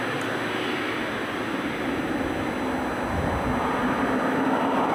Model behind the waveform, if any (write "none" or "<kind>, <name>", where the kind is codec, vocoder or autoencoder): none